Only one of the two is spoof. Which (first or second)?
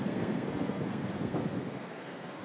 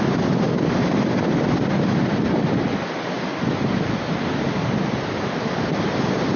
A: first